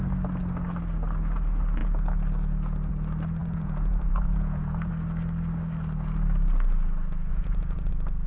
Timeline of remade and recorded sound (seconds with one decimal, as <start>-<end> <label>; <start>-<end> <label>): 0.0-3.4 recorded; 3.4-4.9 remade; 4.9-7.3 recorded; 7.3-7.9 remade; 7.9-8.3 recorded